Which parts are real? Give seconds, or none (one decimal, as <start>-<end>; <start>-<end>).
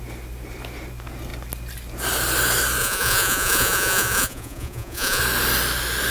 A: 0.0-2.8; 5.2-6.1